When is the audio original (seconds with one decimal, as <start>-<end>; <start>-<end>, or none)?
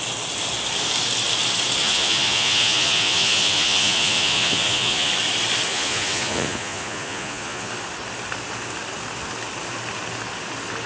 0.0-1.8; 5.1-5.7; 7.7-10.9